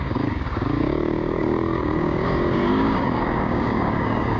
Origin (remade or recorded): remade